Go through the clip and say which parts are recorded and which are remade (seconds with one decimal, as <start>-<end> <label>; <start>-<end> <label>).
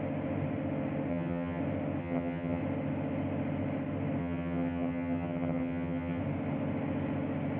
0.0-1.1 recorded; 1.1-1.6 remade; 1.6-2.0 recorded; 2.0-2.6 remade; 2.6-4.2 recorded; 4.2-6.2 remade; 6.2-7.6 recorded